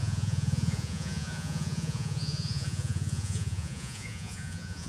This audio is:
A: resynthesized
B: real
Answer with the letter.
A